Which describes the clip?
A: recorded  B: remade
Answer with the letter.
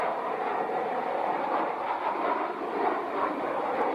B